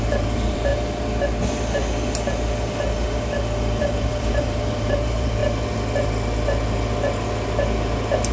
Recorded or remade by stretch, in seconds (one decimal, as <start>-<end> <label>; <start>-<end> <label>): 0.0-0.7 remade; 0.7-3.8 recorded; 3.8-5.4 remade; 5.4-8.3 recorded